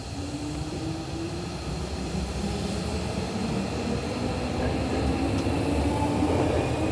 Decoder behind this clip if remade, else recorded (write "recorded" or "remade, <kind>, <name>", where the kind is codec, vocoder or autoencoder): recorded